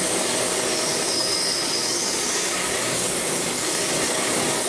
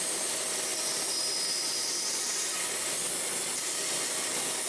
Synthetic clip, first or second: first